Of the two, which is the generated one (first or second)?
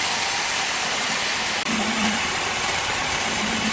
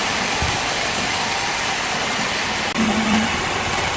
first